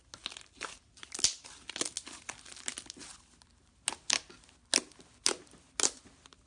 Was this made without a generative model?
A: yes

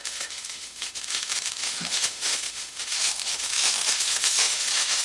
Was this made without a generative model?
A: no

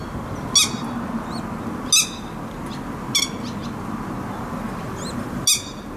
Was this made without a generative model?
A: yes